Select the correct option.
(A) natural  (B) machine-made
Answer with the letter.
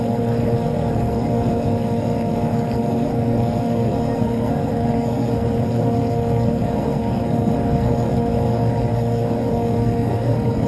B